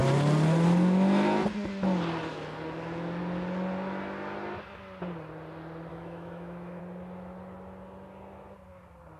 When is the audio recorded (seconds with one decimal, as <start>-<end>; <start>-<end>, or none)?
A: 0.0-5.9; 6.8-9.2